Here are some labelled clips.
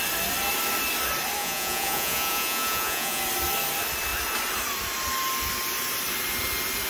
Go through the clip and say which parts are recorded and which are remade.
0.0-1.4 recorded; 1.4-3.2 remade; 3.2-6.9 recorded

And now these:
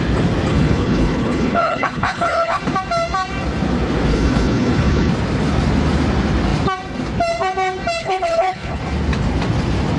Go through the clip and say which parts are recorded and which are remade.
0.0-0.5 recorded; 0.5-2.6 remade; 2.6-4.1 recorded; 4.1-5.1 remade; 5.1-8.0 recorded; 8.0-8.8 remade; 8.8-10.0 recorded

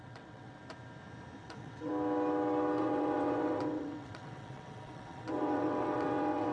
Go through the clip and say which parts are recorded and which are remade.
0.0-0.6 remade; 0.6-1.4 recorded; 1.4-1.9 remade; 1.9-2.8 recorded; 2.8-6.5 remade

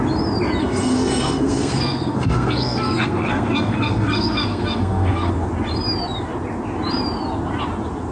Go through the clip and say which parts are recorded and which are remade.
0.0-0.6 recorded; 0.6-5.3 remade; 5.3-8.1 recorded

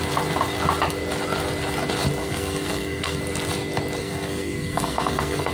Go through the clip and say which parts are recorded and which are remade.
0.0-2.2 recorded; 2.2-3.2 remade; 3.2-4.0 recorded; 4.0-5.5 remade

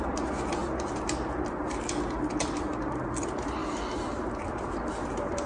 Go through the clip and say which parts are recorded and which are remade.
0.0-5.5 recorded